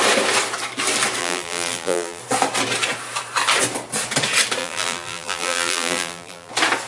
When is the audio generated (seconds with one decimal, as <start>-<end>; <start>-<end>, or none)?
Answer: 1.2-2.2; 4.6-6.5